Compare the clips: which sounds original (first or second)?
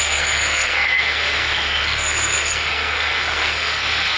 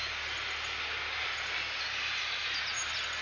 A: second